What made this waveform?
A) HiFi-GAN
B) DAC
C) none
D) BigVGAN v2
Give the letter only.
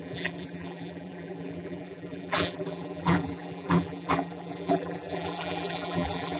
D